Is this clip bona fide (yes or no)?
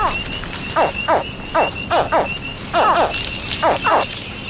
yes